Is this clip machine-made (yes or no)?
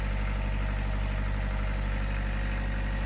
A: no